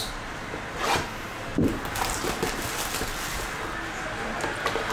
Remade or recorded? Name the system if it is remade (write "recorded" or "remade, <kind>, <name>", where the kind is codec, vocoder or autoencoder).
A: recorded